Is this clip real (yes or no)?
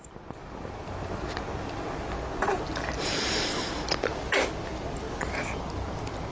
yes